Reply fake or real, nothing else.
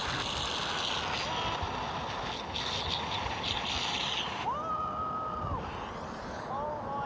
real